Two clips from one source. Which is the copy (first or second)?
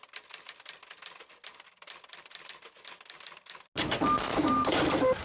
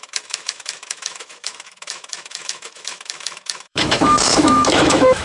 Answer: second